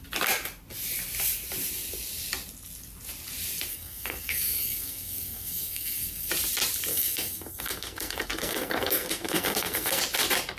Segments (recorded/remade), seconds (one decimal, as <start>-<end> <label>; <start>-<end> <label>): 0.0-3.7 recorded; 3.7-6.3 remade; 6.3-6.9 recorded; 6.9-10.0 remade; 10.0-10.6 recorded